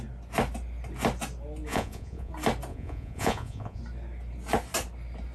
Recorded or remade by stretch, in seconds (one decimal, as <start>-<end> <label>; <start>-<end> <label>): 0.0-1.7 recorded; 1.7-2.3 remade; 2.3-2.7 recorded; 2.7-3.8 remade; 3.8-5.3 recorded